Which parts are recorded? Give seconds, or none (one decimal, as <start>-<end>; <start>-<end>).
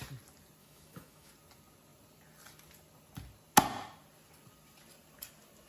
0.0-0.6; 1.3-5.7